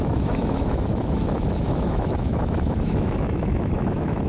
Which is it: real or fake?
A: fake